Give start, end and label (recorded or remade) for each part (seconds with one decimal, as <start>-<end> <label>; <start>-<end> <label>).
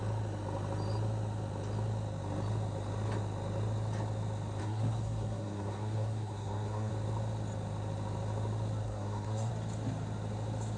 0.0-4.6 recorded; 4.6-6.9 remade; 6.9-8.8 recorded; 8.8-9.5 remade; 9.5-10.8 recorded